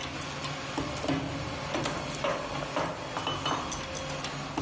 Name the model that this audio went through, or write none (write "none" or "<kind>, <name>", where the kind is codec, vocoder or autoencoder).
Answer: none